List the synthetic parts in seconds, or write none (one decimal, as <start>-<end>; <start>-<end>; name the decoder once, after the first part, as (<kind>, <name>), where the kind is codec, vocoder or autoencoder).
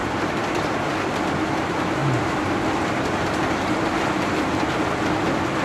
0.0-1.2 (vocoder, BigVGAN v2); 2.0-4.8